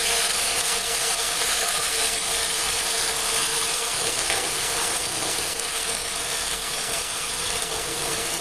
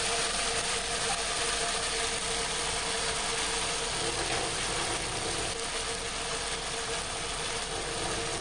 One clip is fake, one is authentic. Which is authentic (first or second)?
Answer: second